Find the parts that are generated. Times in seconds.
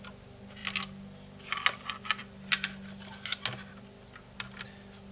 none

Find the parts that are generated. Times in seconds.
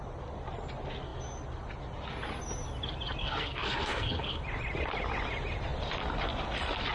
3.2-4.4 (codec, SNAC)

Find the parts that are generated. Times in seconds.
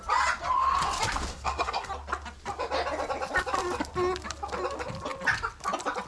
1.3-1.9 (codec, SNAC)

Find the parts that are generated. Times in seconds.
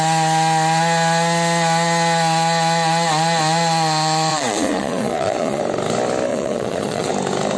4.3-5.6 (vocoder, Vocos); 6.3-7.1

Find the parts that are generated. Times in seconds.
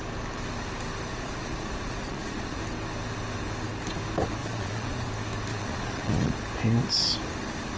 1.1-2.6 (vocoder, Vocos); 4.4-5.1; 5.5-6.3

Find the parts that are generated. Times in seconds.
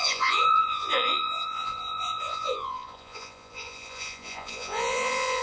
0.0-5.4 (vocoder, Vocos)